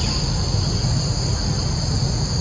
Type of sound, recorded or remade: recorded